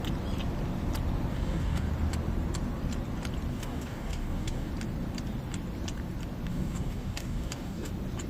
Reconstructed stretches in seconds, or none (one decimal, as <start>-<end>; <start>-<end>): 1.3-1.9; 3.5-4.7; 6.5-7.9